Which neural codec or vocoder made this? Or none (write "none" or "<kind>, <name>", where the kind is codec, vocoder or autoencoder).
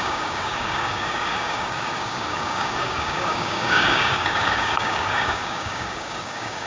codec, DAC